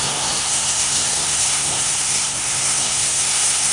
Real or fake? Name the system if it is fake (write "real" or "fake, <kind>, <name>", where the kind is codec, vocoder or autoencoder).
fake, codec, SNAC